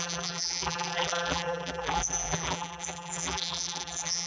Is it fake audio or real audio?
fake